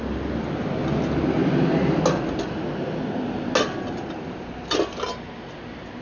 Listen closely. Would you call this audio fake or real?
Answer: real